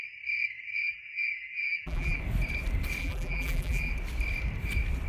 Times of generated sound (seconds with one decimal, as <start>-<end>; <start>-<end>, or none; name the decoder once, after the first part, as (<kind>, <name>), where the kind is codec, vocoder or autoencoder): 0.8-2.2 (vocoder, BigVGAN v2); 3.0-3.9